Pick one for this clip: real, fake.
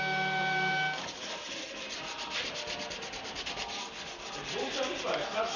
real